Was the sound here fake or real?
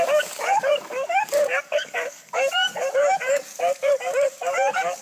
fake